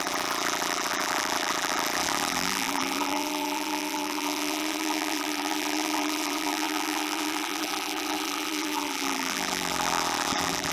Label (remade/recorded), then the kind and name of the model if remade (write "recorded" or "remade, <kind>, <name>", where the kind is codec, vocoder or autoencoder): remade, vocoder, BigVGAN v2